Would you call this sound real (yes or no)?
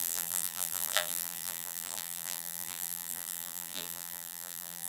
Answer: no